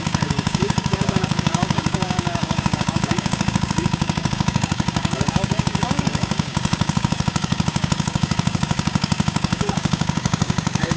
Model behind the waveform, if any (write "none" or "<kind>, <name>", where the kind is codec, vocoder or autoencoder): codec, DAC